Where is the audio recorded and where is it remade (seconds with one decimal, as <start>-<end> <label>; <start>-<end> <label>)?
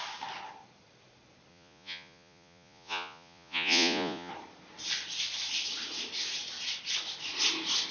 0.0-1.5 recorded; 1.5-4.3 remade; 4.3-7.9 recorded